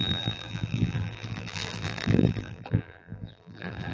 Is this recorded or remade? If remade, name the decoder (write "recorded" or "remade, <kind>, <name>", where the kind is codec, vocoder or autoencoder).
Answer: remade, vocoder, BigVGAN v2